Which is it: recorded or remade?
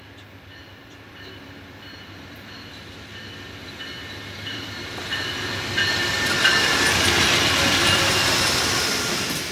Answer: remade